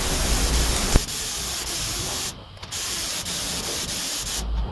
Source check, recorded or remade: recorded